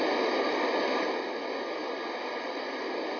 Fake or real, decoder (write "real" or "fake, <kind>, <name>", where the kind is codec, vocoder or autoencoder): real